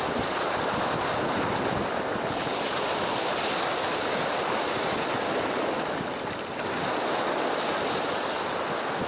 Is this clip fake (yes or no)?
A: no